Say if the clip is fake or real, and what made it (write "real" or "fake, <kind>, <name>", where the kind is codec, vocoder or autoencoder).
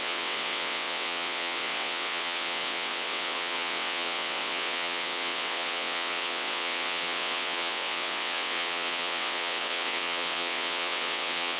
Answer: fake, vocoder, WaveNeXt